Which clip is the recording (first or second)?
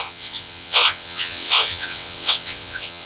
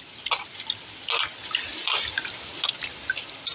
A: second